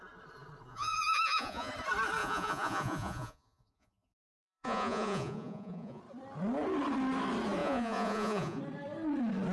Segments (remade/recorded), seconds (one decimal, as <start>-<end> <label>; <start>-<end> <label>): 0.0-0.7 recorded; 0.7-1.7 remade; 1.7-2.2 recorded; 2.2-6.0 remade; 6.0-7.6 recorded; 7.6-8.6 remade; 8.6-9.5 recorded